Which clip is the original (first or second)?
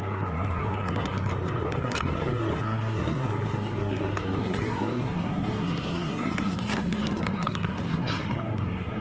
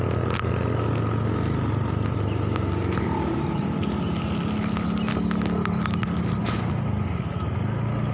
second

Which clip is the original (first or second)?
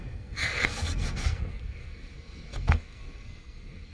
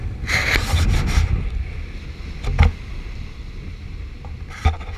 second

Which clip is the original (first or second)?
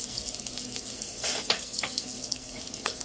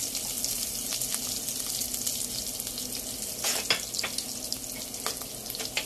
second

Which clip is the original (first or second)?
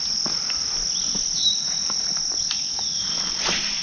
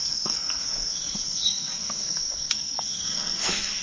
first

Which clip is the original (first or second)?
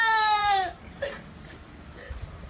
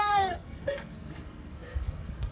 first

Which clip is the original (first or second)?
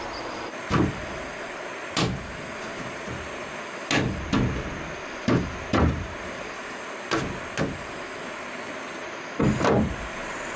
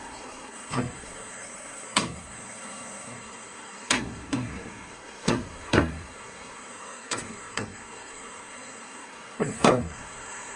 first